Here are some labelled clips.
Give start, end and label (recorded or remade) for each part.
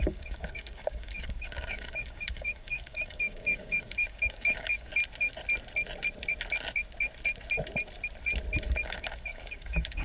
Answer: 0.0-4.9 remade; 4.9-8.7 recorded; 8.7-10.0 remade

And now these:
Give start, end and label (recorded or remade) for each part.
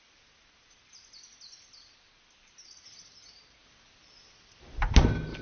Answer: 0.0-5.4 recorded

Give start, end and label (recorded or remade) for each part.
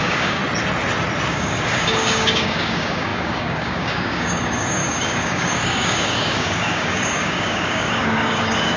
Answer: 0.0-0.4 remade; 0.4-1.3 recorded; 1.3-8.8 remade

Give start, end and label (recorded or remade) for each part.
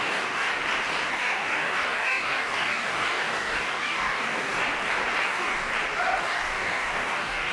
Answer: 0.0-0.6 remade; 0.6-1.1 recorded; 1.1-4.5 remade; 4.5-5.2 recorded; 5.2-5.7 remade; 5.7-6.2 recorded; 6.2-7.5 remade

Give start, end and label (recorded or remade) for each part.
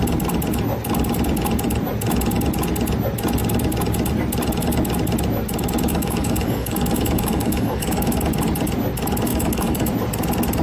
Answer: 0.0-5.9 recorded; 5.9-8.2 remade; 8.2-9.3 recorded; 9.3-9.9 remade; 9.9-10.6 recorded